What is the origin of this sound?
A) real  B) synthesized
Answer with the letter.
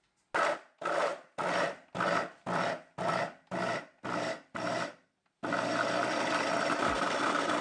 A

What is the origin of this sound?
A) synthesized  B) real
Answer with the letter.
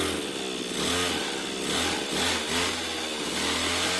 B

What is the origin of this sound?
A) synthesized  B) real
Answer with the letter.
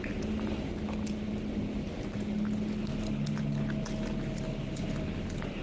B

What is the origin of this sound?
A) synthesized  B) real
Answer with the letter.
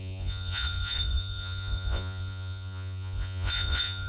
A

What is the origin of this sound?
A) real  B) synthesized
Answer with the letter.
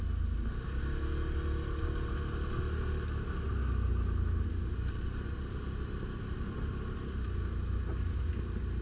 A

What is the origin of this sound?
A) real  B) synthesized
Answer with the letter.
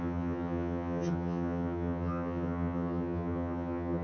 B